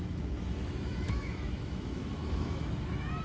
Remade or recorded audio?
remade